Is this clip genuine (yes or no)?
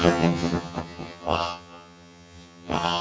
no